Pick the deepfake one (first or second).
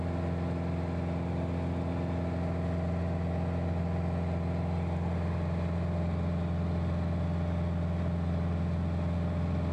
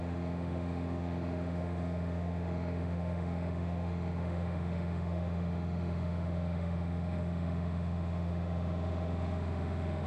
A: second